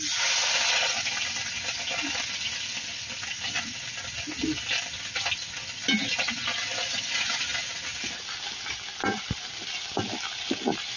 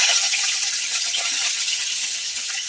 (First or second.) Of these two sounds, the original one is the first